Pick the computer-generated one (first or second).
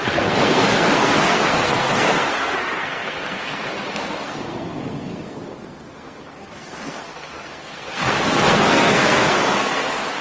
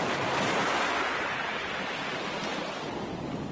first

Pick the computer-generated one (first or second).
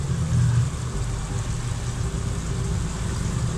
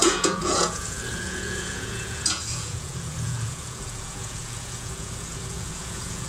second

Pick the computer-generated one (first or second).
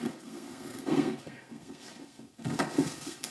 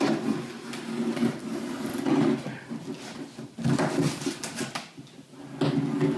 first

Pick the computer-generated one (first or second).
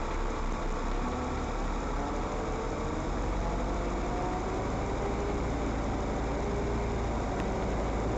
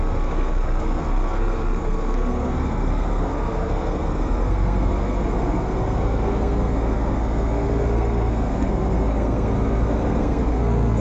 second